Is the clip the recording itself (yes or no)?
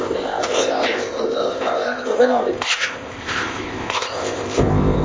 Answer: no